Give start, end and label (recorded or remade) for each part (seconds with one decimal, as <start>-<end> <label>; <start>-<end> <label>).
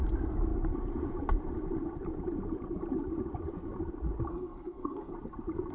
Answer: 0.0-4.3 recorded; 4.3-5.1 remade; 5.1-5.7 recorded